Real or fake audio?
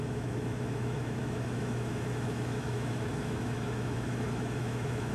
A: fake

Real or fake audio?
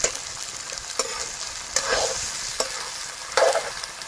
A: real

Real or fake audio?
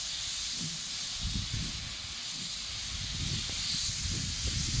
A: real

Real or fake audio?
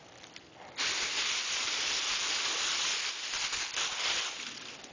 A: real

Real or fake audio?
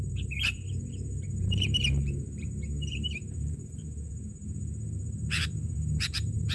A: fake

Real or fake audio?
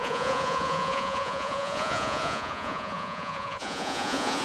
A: fake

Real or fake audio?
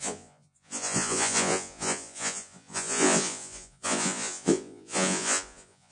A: fake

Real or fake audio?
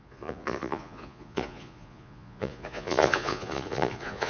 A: fake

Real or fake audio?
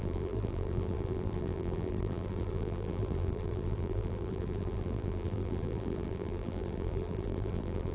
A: fake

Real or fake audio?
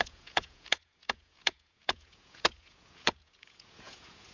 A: fake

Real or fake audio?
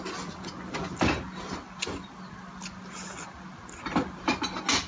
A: real